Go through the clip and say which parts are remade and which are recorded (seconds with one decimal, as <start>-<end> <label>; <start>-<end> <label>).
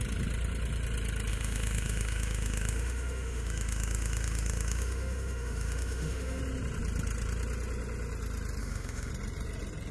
0.0-1.3 recorded; 1.3-6.4 remade; 6.4-8.6 recorded; 8.6-9.1 remade; 9.1-9.9 recorded